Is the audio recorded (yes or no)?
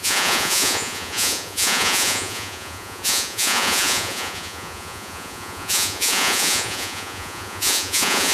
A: no